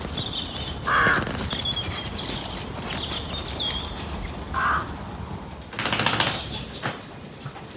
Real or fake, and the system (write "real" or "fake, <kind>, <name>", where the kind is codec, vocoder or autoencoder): real